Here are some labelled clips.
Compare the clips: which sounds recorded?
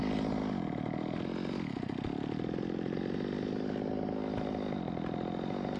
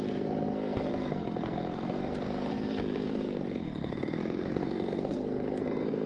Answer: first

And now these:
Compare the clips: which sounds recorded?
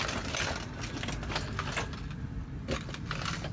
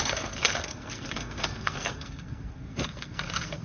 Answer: first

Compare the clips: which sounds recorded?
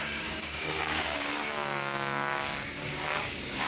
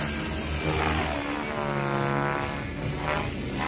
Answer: second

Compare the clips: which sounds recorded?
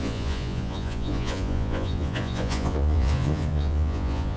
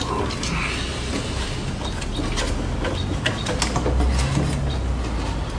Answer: second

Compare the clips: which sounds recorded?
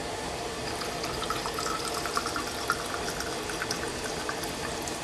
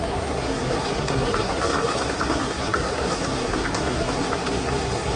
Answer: first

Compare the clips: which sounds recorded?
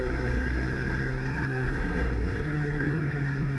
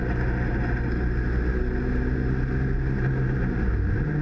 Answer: second